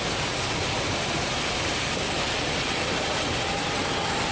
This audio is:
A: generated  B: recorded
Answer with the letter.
B